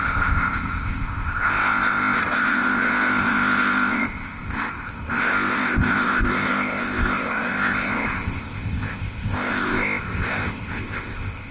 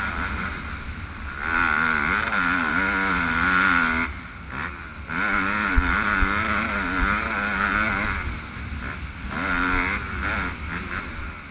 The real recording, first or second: second